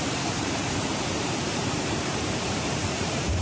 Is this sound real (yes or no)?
no